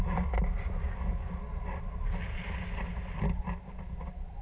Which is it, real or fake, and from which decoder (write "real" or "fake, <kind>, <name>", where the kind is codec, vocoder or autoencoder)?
real